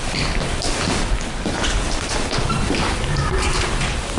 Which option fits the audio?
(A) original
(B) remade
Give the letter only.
B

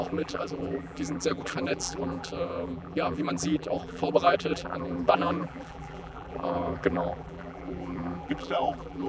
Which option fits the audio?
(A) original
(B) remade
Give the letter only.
B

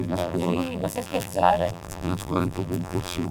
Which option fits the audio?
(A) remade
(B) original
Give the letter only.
A